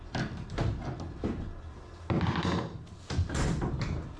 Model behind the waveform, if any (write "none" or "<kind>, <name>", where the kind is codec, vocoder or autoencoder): none